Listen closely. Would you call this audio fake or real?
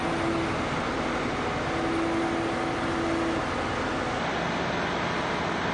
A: fake